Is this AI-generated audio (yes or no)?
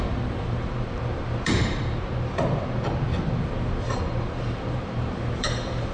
yes